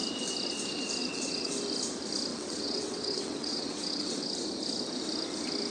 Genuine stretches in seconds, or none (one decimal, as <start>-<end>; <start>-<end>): 0.0-1.0; 1.5-2.3; 4.3-5.7